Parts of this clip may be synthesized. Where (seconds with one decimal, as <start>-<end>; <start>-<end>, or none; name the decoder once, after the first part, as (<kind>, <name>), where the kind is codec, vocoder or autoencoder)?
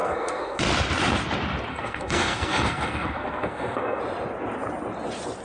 0.0-0.6 (codec, SNAC); 1.7-4.0